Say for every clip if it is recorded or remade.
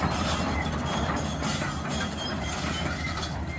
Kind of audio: recorded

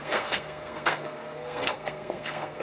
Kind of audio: remade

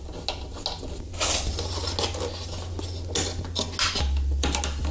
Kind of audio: recorded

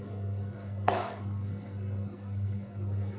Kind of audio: remade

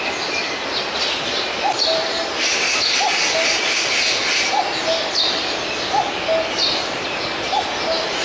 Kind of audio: recorded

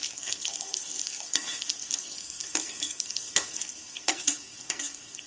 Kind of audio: remade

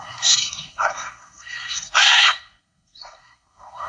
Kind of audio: remade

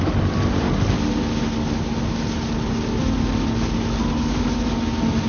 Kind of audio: recorded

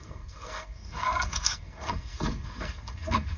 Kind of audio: remade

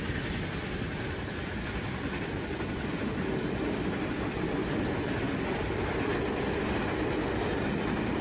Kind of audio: recorded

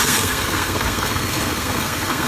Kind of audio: remade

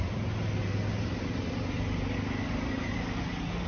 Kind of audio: recorded